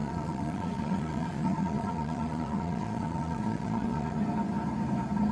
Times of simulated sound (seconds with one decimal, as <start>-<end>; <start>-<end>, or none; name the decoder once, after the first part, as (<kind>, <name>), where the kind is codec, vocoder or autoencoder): 0.0-4.2 (vocoder, Vocos)